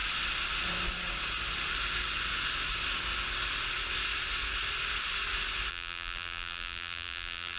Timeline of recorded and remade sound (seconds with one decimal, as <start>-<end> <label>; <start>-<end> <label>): 0.0-5.7 recorded; 5.7-7.6 remade